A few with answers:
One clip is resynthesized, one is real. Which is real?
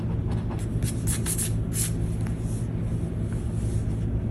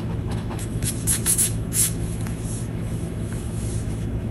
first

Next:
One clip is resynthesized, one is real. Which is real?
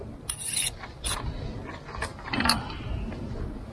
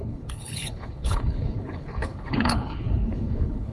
first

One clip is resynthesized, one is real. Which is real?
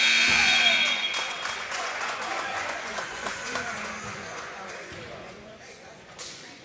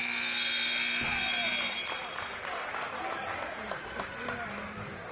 second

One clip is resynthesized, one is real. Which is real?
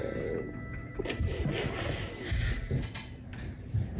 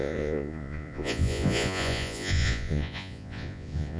first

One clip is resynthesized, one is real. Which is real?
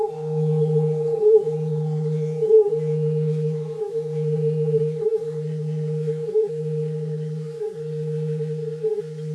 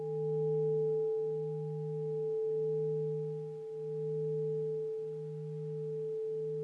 second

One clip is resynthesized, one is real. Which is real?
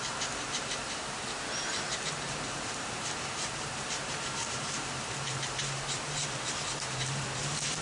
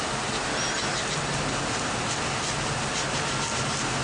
second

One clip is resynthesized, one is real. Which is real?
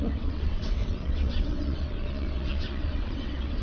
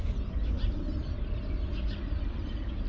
second